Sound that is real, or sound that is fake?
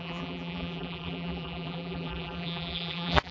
fake